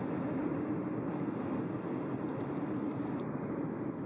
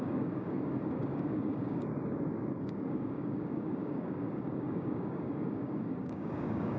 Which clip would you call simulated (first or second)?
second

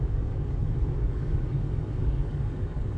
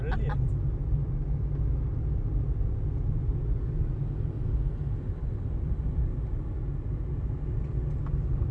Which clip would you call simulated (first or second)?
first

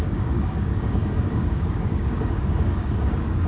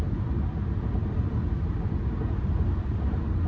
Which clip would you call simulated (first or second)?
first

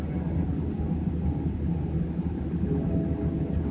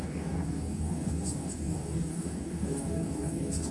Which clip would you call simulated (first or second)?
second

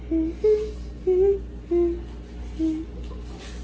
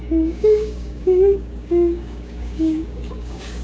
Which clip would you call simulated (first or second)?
second